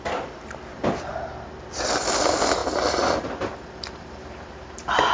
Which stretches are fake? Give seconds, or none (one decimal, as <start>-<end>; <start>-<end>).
0.0-1.1; 1.6-2.6; 3.5-5.1